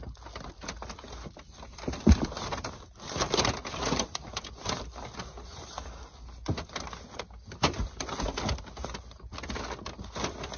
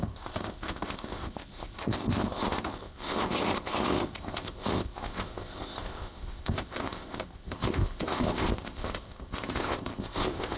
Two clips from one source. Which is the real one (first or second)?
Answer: first